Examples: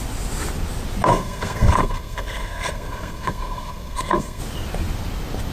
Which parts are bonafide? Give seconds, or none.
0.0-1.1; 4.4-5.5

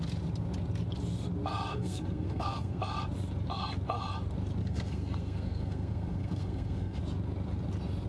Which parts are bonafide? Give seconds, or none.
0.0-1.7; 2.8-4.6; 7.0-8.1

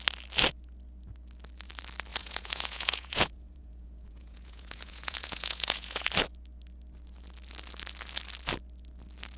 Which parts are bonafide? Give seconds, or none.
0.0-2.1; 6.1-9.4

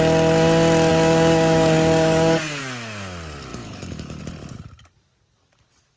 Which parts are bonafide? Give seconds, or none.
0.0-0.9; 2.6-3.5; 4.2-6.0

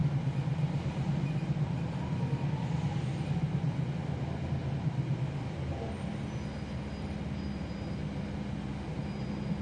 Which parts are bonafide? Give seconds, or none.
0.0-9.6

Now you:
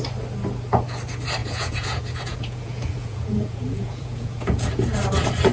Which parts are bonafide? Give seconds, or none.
0.0-1.4; 4.7-5.5

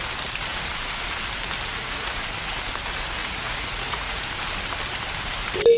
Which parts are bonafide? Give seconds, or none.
0.0-1.7; 2.2-3.2; 4.3-5.8

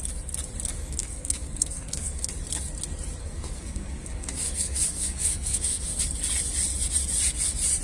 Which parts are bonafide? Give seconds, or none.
0.0-0.8; 2.3-3.2; 6.0-7.8